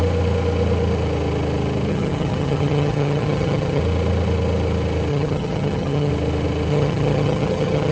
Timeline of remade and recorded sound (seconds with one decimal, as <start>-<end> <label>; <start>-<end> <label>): 0.0-1.9 recorded; 1.9-3.8 remade; 3.8-5.1 recorded; 5.1-6.1 remade; 6.1-6.7 recorded; 6.7-7.9 remade